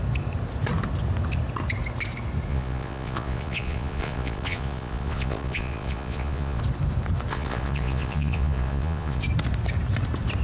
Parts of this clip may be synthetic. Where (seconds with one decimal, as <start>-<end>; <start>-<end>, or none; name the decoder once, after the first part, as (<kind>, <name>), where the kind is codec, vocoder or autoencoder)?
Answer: 2.5-6.6 (vocoder, Vocos); 7.3-9.2